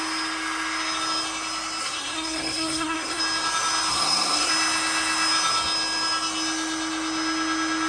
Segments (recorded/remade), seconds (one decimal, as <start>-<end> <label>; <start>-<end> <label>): 0.0-1.8 recorded; 1.8-3.2 remade; 3.2-3.9 recorded; 3.9-4.5 remade; 4.5-7.9 recorded